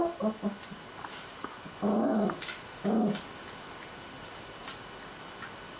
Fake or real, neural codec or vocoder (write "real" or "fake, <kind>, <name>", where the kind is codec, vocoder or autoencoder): real